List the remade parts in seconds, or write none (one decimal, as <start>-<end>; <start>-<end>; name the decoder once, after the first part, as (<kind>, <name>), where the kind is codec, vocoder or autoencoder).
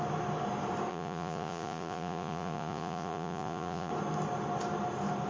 0.9-3.9 (vocoder, Vocos)